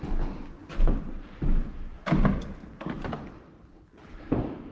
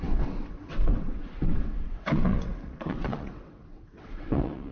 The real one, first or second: first